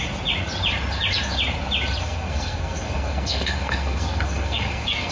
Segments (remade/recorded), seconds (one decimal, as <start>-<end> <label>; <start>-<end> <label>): 0.0-2.0 recorded; 2.0-5.1 remade

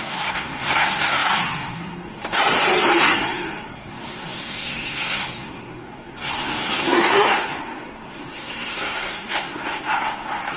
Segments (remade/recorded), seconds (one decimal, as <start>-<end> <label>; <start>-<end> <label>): 0.0-2.4 remade; 2.4-3.0 recorded; 3.0-10.6 remade

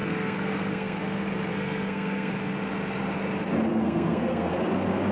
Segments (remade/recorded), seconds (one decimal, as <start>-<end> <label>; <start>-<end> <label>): 0.0-1.0 remade; 1.0-1.5 recorded; 1.5-2.3 remade; 2.3-3.7 recorded; 3.7-4.5 remade; 4.5-5.1 recorded

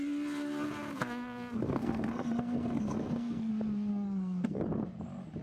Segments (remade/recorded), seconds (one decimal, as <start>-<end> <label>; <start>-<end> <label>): 0.0-0.9 recorded; 0.9-3.5 remade; 3.5-3.9 recorded; 3.9-4.6 remade; 4.6-5.4 recorded

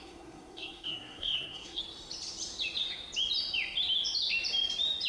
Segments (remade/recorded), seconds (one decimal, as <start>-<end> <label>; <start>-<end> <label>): 0.0-1.8 remade; 1.8-5.1 recorded